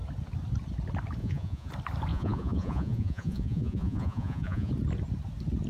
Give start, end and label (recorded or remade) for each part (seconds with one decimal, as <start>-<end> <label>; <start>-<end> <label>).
0.0-1.2 recorded; 1.2-1.7 remade; 1.7-2.1 recorded; 2.1-4.7 remade; 4.7-5.7 recorded